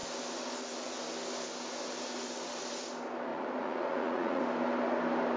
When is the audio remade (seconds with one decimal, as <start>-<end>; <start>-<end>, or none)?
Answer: 3.3-4.4